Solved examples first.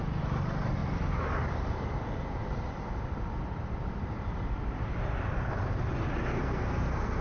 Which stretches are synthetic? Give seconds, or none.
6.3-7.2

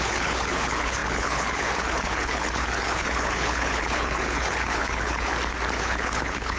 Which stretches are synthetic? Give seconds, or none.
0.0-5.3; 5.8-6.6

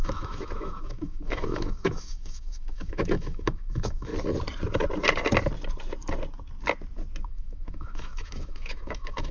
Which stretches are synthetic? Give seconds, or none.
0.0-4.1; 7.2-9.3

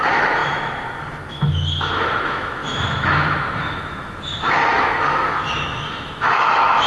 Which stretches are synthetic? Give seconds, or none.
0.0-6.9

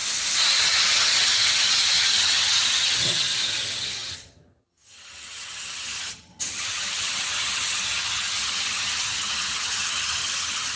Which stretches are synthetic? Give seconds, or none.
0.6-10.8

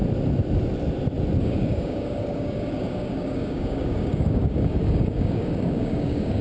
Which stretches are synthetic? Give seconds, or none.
1.4-6.4